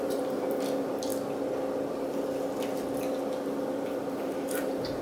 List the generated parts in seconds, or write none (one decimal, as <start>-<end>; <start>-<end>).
0.0-1.1; 4.1-5.0